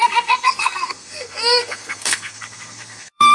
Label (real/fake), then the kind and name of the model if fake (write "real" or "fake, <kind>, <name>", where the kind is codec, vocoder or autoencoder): fake, codec, SNAC